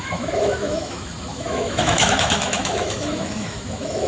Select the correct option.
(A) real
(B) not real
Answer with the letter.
B